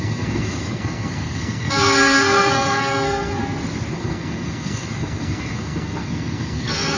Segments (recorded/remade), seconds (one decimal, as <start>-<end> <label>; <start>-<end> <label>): 0.0-3.4 remade; 3.4-3.9 recorded; 3.9-7.0 remade